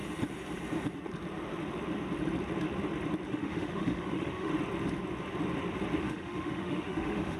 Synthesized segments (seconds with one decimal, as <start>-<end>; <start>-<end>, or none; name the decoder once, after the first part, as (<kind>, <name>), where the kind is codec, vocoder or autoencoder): 3.3-4.5 (autoencoder, DAC-VAE); 6.0-7.4